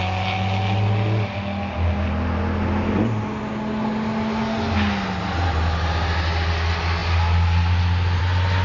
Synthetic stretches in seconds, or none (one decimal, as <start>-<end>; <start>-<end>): none